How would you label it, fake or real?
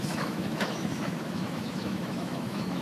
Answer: fake